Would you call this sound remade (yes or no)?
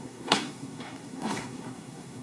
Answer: yes